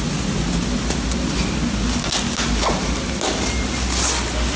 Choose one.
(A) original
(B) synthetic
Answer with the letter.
A